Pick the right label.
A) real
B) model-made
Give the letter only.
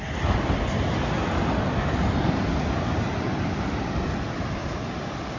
A